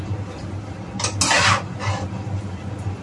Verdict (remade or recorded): recorded